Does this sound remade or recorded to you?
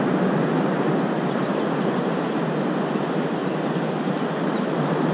recorded